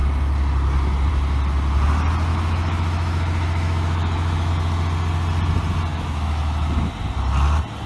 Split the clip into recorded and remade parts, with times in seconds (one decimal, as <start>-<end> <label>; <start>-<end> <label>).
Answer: 0.0-2.3 recorded; 2.3-4.5 remade; 4.5-5.9 recorded; 5.9-6.9 remade; 6.9-7.9 recorded

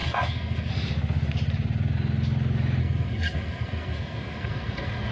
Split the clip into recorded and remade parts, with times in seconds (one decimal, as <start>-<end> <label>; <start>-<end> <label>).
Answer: 0.0-0.7 remade; 0.7-2.8 recorded; 2.8-5.1 remade

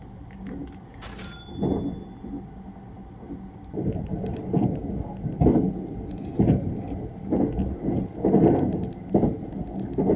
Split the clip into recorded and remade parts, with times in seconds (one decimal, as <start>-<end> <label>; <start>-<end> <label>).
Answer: 0.0-10.2 recorded

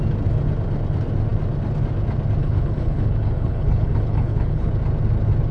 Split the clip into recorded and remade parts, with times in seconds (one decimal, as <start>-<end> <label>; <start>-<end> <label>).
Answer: 0.0-2.4 recorded; 2.4-4.7 remade; 4.7-5.5 recorded

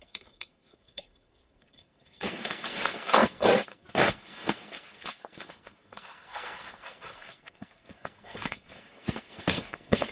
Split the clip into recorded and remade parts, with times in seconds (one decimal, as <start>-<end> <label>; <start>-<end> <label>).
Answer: 0.0-10.1 remade